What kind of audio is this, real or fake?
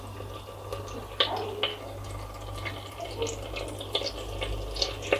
real